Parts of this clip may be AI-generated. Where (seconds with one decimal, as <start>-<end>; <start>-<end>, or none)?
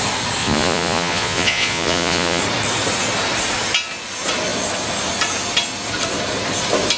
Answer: 0.4-2.4